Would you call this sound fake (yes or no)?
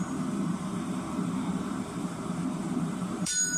yes